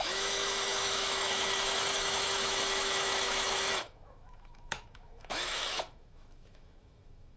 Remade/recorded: remade